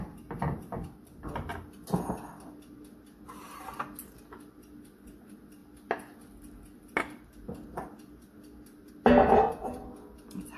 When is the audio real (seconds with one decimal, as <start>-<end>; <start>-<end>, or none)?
0.0-10.6